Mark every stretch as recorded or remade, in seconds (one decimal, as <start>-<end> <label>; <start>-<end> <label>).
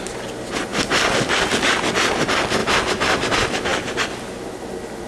0.0-2.6 recorded; 2.6-3.3 remade; 3.3-5.1 recorded